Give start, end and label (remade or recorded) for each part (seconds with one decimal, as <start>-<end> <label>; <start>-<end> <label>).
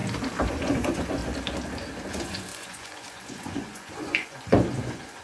0.0-0.5 recorded; 0.5-1.2 remade; 1.2-2.1 recorded; 2.1-5.2 remade